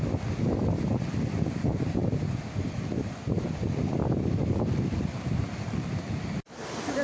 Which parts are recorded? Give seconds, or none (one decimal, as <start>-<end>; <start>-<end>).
0.0-7.0